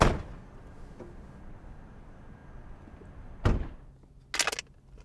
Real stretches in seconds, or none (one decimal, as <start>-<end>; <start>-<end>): 0.0-5.0